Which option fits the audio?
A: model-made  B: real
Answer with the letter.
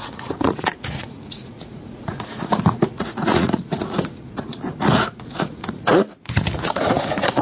A